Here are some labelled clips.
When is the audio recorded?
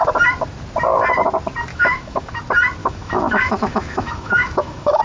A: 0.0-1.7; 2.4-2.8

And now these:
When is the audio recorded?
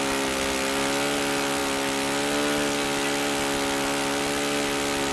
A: 0.0-5.1